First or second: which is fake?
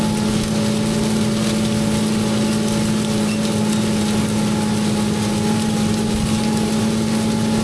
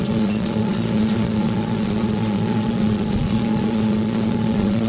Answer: second